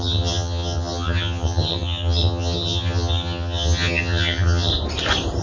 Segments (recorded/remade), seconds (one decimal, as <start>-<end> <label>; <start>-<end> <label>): 0.0-4.7 remade; 4.7-5.4 recorded